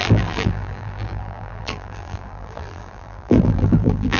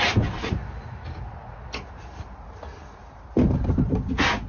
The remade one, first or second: first